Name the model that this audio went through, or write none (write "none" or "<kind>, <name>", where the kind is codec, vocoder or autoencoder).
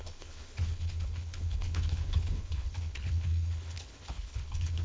codec, HILCodec